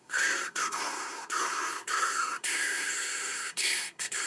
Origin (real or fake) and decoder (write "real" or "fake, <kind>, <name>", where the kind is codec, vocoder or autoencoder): fake, codec, SNAC